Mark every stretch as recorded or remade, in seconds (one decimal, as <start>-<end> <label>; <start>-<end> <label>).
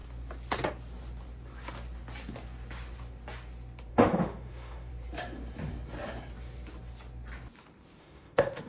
0.0-3.9 recorded; 3.9-4.9 remade; 4.9-8.0 recorded; 8.0-8.7 remade